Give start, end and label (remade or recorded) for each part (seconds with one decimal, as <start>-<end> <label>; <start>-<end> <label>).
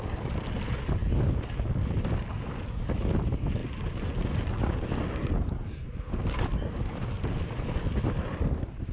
0.0-8.9 recorded